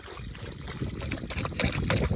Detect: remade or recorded recorded